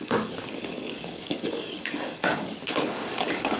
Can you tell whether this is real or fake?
fake